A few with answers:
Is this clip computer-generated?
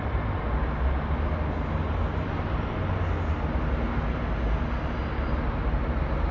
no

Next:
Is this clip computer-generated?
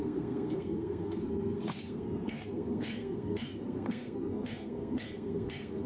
yes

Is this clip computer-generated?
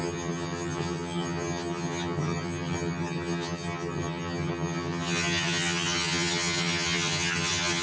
yes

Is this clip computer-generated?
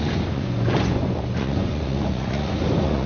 yes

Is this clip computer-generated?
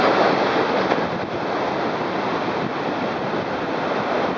no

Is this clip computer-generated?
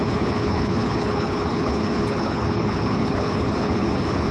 yes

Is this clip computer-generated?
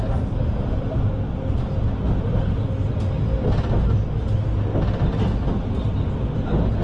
no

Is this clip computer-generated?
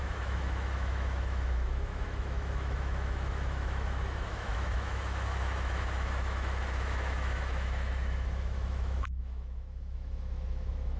yes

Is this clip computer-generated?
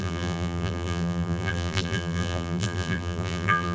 yes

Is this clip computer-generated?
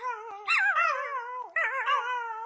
no